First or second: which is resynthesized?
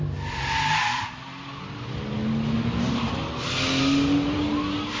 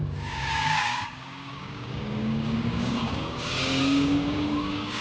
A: second